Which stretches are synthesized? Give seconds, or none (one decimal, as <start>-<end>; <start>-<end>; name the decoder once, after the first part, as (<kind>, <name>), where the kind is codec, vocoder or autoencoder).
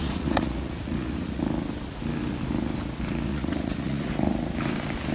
0.0-1.4 (vocoder, Vocos); 3.3-4.1